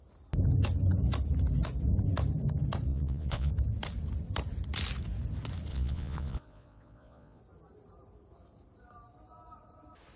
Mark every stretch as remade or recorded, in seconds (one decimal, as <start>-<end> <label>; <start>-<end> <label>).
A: 0.0-2.9 recorded; 2.9-3.5 remade; 3.5-5.7 recorded; 5.7-7.4 remade; 7.4-10.2 recorded